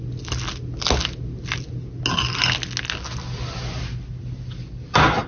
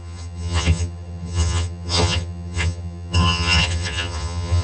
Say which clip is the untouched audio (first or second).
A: first